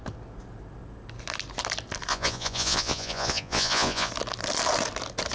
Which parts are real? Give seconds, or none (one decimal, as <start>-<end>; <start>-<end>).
0.0-2.1; 4.1-5.3